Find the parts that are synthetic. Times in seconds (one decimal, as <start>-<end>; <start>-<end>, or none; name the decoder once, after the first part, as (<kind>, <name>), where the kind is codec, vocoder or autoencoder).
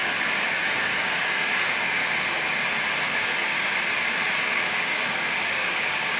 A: 0.0-2.0 (codec, DAC); 3.0-3.7; 4.4-6.2